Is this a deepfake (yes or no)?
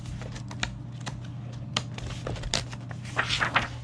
no